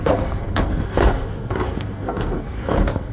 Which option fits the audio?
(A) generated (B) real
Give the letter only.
A